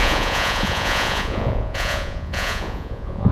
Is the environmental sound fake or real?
fake